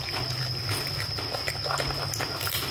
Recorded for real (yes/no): yes